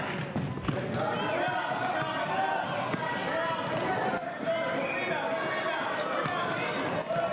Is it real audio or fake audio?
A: real